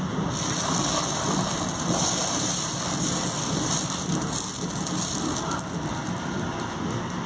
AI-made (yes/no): no